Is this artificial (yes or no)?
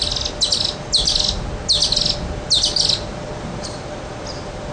no